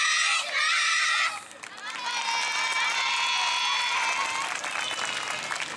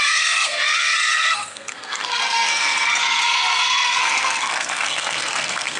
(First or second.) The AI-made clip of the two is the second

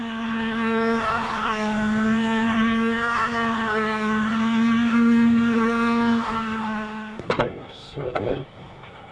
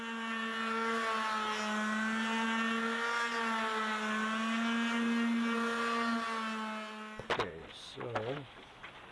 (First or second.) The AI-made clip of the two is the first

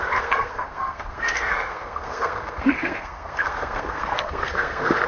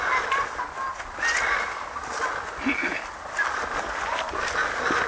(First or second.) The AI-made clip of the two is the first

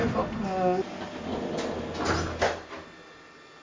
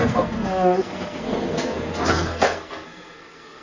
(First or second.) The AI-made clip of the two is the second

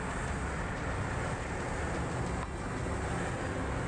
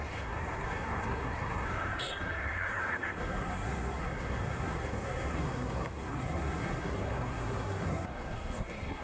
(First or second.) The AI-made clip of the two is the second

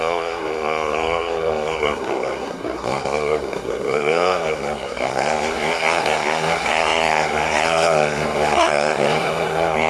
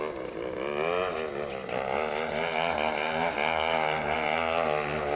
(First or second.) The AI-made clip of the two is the first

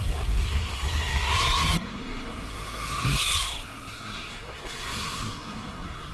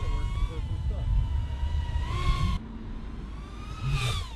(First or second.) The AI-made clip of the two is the first